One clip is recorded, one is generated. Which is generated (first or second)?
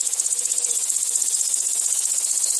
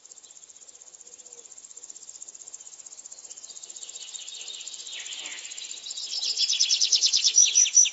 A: first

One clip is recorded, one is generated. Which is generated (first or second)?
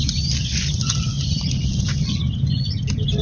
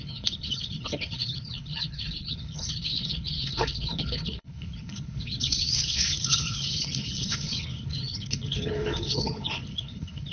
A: second